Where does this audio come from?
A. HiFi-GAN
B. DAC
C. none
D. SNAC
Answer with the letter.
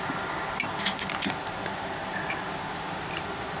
C